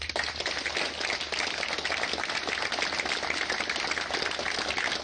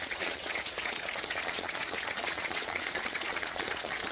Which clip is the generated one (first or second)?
second